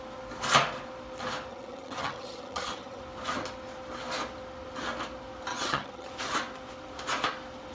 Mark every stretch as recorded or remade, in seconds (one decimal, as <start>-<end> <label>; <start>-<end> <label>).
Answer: 0.0-1.5 recorded; 1.5-3.0 remade; 3.0-5.5 recorded; 5.5-6.1 remade; 6.1-7.7 recorded